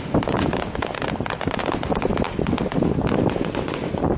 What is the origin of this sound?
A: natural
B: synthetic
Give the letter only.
A